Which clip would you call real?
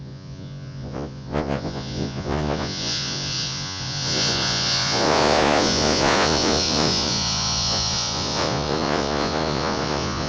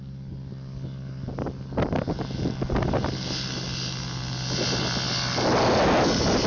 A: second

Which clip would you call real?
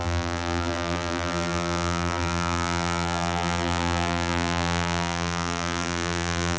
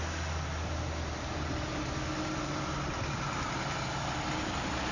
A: second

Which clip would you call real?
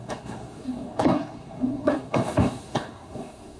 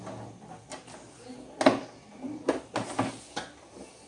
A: second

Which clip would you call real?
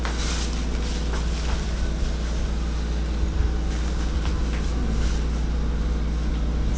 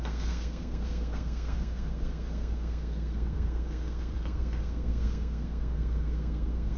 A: first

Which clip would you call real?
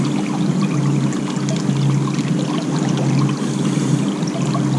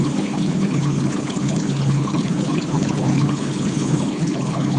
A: first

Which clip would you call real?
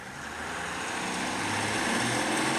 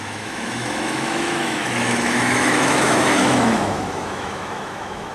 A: first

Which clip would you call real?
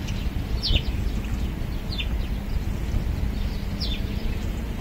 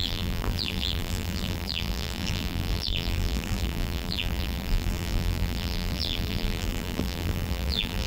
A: first